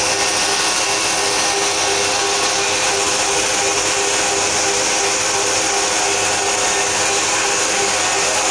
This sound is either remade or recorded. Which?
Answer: recorded